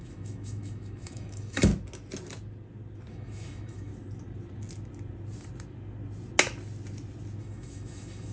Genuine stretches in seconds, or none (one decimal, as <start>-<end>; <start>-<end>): 1.7-3.1; 3.9-7.4